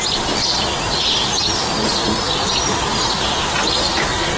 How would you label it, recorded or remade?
recorded